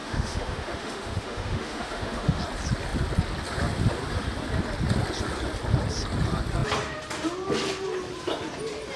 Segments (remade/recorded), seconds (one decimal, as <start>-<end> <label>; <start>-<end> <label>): 0.0-2.4 remade; 2.4-9.0 recorded

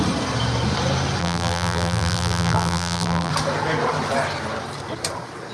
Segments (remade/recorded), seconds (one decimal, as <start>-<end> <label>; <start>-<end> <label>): 0.0-1.2 recorded; 1.2-3.3 remade; 3.3-5.5 recorded

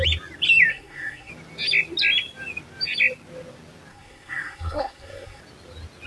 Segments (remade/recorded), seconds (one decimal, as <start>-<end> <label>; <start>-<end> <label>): 0.0-0.7 recorded; 0.7-1.3 remade; 1.3-3.9 recorded; 3.9-5.4 remade; 5.4-6.1 recorded

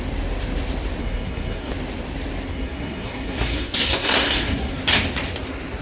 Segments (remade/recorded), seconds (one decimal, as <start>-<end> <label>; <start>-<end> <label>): 0.0-1.0 recorded; 1.0-1.7 remade; 1.7-2.5 recorded; 2.5-4.7 remade; 4.7-5.8 recorded

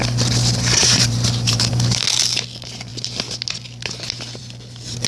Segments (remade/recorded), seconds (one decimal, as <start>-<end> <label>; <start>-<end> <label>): 0.0-0.8 recorded; 0.8-1.7 remade; 1.7-5.1 recorded

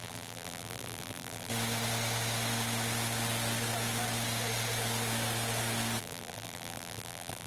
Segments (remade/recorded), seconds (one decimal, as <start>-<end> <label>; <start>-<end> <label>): 0.0-1.5 remade; 1.5-6.0 recorded; 6.0-7.5 remade

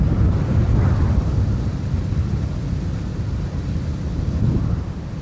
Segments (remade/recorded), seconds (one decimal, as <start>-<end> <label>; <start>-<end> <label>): 0.0-3.1 recorded; 3.1-3.6 remade; 3.6-5.2 recorded